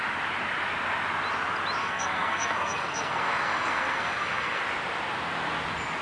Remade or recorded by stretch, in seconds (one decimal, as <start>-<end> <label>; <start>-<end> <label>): 0.0-1.8 recorded; 1.8-4.6 remade; 4.6-6.0 recorded